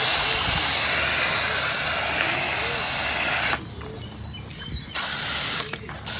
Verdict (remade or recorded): recorded